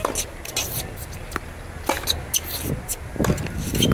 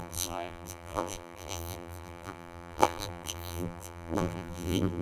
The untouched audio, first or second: first